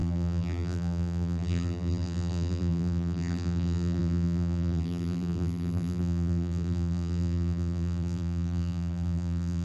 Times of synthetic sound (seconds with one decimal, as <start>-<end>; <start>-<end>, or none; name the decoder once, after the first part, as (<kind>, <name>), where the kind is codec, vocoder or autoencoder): 0.0-9.6 (vocoder, BigVGAN v2)